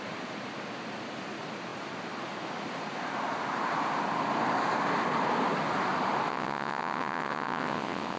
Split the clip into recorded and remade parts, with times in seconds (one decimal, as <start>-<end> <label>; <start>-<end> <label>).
0.0-6.3 recorded; 6.3-8.2 remade